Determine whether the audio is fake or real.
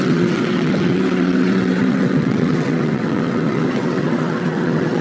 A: fake